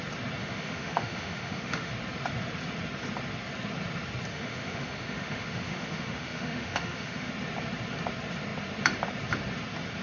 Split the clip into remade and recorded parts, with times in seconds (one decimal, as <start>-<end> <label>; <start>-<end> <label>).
0.0-0.4 recorded; 0.4-1.9 remade; 1.9-4.3 recorded; 4.3-7.3 remade; 7.3-10.0 recorded